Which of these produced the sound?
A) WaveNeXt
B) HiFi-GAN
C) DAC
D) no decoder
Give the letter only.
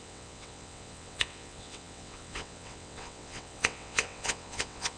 A